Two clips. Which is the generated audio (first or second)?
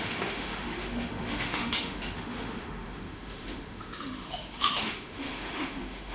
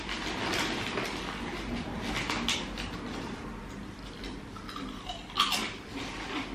first